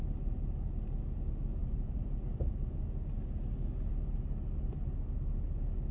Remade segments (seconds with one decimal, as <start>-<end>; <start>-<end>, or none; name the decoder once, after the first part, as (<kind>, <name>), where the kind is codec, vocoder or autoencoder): 1.6-2.5 (vocoder, BigVGAN v2)